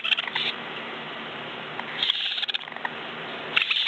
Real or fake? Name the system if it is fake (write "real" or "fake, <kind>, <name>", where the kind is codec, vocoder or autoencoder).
fake, vocoder, BigVGAN v2